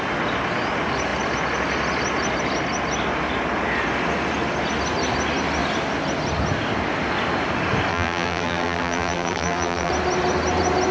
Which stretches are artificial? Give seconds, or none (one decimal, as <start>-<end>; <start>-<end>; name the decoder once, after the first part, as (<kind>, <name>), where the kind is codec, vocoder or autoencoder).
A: 7.9-9.9 (vocoder, BigVGAN v2)

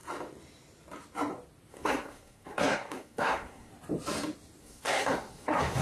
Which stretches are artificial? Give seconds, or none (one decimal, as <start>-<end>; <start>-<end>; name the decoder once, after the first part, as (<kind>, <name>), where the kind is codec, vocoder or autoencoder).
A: 1.7-3.7 (codec, SNAC); 4.6-5.8